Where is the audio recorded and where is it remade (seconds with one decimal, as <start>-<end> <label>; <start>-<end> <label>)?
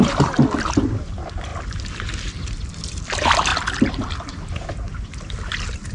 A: 0.0-5.9 recorded